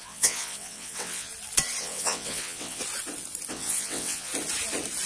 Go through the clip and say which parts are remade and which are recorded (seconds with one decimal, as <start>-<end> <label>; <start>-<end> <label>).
0.0-1.3 remade; 1.3-1.8 recorded; 1.8-2.8 remade; 2.8-3.5 recorded; 3.5-4.3 remade; 4.3-5.1 recorded